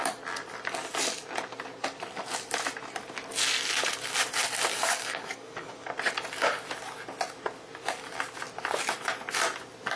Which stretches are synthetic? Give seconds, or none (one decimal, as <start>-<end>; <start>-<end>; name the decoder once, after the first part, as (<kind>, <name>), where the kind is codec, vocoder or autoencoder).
4.7-5.9 (codec, DAC)

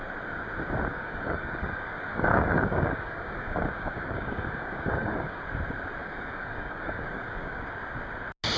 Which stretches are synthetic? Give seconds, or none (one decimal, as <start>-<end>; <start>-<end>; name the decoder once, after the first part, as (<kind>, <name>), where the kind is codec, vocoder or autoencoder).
0.9-5.4 (codec, DAC); 6.0-7.6